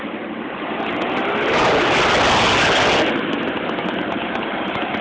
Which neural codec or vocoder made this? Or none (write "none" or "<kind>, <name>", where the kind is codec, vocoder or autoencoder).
none